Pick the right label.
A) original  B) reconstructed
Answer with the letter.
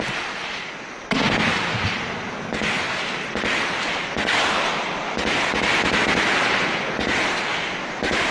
A